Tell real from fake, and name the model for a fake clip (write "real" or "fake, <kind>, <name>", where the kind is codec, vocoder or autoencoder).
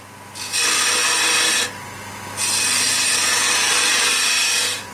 real